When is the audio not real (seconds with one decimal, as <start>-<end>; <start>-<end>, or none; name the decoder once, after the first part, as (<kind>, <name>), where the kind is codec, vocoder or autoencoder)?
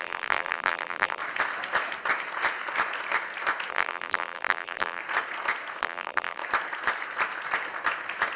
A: 0.0-1.2 (vocoder, BigVGAN v2); 3.7-5.0; 5.8-6.4